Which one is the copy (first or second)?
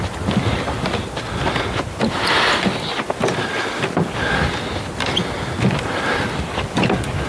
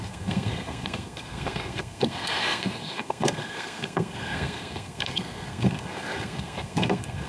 second